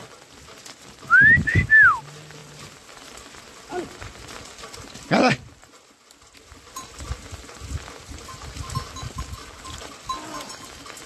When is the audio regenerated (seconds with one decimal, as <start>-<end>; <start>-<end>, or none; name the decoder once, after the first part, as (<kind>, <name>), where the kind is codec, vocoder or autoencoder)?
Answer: none